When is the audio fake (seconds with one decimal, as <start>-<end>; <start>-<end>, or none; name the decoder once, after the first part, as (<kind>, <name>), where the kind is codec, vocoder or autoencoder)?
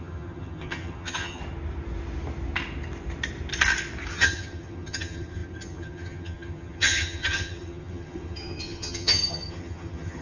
0.0-1.4 (vocoder, HiFi-GAN); 4.1-10.2